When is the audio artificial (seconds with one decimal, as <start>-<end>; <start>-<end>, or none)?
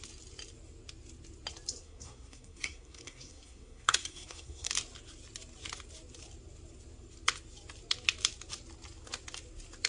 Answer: 1.8-4.7